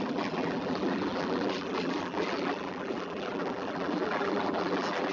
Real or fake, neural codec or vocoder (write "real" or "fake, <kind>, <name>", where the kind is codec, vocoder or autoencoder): fake, vocoder, BigVGAN v2